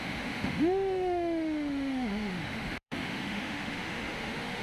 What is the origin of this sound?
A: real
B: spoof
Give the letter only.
B